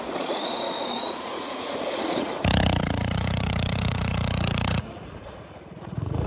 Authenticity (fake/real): fake